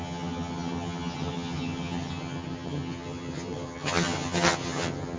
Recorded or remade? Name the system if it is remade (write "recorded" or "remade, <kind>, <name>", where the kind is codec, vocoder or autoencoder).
remade, vocoder, HiFi-GAN